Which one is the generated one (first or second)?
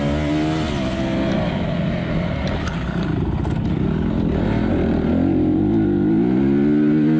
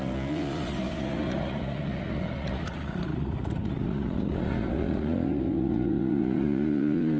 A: second